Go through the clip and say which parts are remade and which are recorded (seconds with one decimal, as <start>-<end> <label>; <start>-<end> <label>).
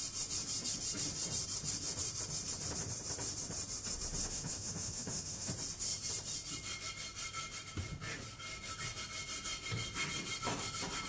0.0-4.2 recorded; 4.2-5.5 remade; 5.5-11.1 recorded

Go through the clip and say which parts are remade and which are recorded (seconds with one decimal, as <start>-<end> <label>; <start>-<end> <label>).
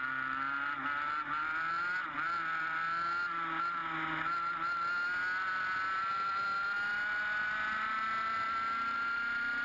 0.0-9.6 recorded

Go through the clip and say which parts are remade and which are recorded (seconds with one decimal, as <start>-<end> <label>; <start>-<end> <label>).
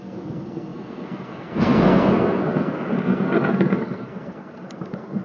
0.0-5.2 remade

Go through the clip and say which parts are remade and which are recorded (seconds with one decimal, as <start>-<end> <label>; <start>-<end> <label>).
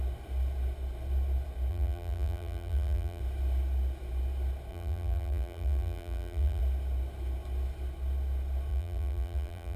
0.0-1.7 recorded; 1.7-3.2 remade; 3.2-4.7 recorded; 4.7-6.6 remade; 6.6-8.7 recorded; 8.7-9.8 remade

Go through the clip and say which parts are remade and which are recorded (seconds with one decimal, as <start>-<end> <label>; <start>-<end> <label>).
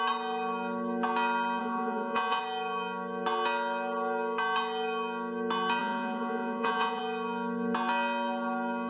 0.0-1.6 recorded; 1.6-2.4 remade; 2.4-5.8 recorded; 5.8-7.0 remade; 7.0-8.9 recorded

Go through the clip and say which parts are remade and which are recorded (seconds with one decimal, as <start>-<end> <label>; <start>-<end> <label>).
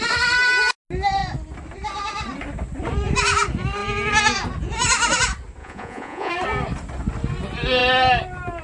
0.0-5.6 recorded; 5.6-6.3 remade; 6.3-8.6 recorded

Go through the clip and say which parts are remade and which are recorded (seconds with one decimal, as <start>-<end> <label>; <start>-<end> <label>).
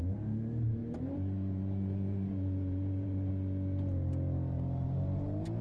0.0-0.8 recorded; 0.8-3.3 remade; 3.3-5.6 recorded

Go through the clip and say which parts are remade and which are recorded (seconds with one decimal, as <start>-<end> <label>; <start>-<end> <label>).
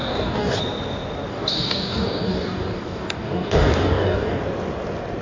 0.0-0.6 remade; 0.6-1.3 recorded; 1.3-4.4 remade; 4.4-5.2 recorded